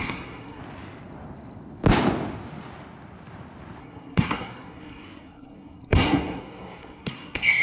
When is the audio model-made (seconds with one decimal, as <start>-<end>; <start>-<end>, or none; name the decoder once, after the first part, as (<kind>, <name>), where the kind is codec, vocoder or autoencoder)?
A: 0.0-0.6 (codec, SNAC); 3.8-7.6